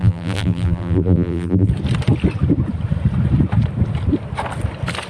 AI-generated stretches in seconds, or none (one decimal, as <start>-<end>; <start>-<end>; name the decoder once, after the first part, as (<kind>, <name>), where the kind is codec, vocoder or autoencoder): 0.0-1.7 (vocoder, BigVGAN v2)